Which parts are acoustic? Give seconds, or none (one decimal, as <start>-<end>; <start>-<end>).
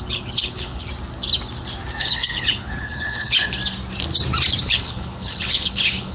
0.9-2.0; 3.6-4.6